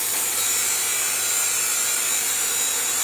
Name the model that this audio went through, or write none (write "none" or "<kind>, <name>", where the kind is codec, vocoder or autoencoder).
none